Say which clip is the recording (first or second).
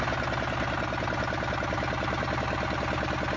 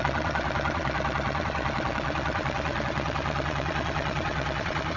first